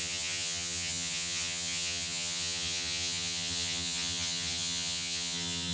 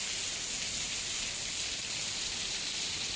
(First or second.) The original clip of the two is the second